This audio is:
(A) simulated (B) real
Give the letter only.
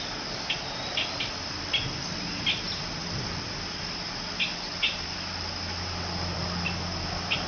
B